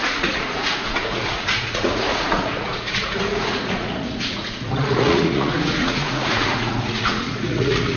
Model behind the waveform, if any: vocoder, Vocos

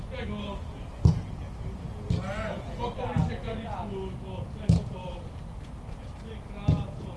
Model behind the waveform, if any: none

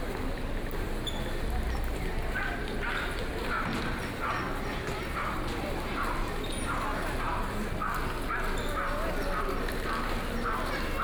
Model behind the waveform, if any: none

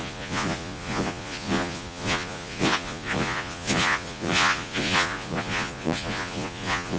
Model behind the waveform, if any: vocoder, Vocos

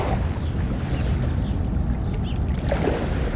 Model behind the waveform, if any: none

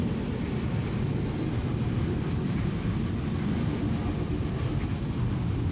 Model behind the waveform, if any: vocoder, BigVGAN v2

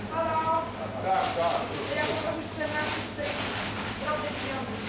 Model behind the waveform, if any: none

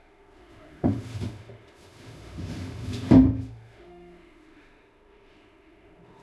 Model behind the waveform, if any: autoencoder, DAC-VAE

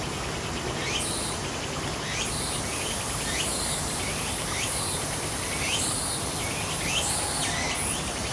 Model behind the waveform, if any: none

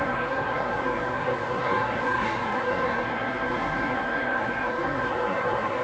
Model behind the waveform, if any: codec, SNAC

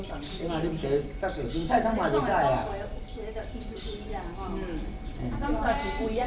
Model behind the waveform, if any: none